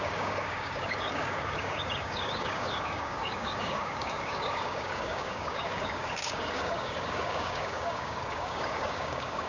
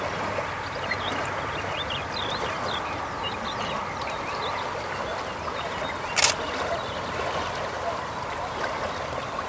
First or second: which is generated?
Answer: first